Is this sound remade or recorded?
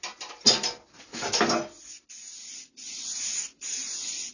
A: recorded